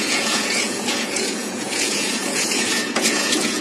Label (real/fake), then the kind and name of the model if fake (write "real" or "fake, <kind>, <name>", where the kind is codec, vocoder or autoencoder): fake, vocoder, Vocos